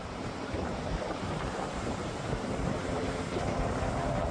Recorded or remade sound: remade